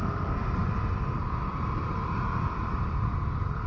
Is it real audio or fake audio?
fake